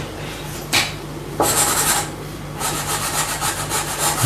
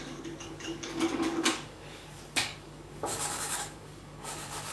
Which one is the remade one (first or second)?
second